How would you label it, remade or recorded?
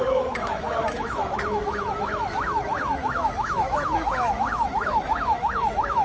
remade